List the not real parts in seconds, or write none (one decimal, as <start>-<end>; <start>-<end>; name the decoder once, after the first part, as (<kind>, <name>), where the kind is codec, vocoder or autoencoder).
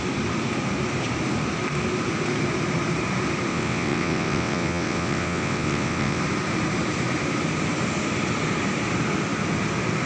3.5-6.2 (vocoder, WaveNeXt)